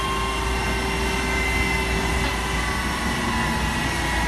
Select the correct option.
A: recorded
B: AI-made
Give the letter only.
A